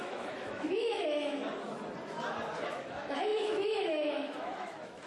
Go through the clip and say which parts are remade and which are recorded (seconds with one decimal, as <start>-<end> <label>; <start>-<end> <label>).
0.0-1.4 remade; 1.4-2.6 recorded; 2.6-5.1 remade

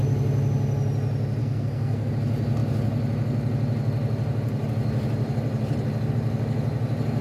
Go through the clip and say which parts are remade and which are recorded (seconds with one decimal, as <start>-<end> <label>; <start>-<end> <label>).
0.0-1.4 recorded; 1.4-2.1 remade; 2.1-7.2 recorded

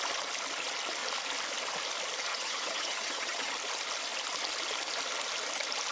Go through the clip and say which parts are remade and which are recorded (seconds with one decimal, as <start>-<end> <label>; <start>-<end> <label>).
0.0-2.3 recorded; 2.3-3.5 remade; 3.5-5.9 recorded

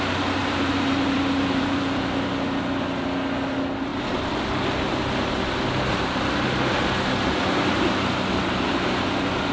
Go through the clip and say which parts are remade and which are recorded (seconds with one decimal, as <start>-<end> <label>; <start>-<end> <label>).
0.0-0.4 recorded; 0.4-2.3 remade; 2.3-9.5 recorded

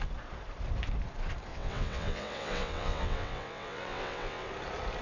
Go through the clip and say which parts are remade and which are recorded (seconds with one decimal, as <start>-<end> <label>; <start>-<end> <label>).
0.0-1.5 recorded; 1.5-4.5 remade; 4.5-5.0 recorded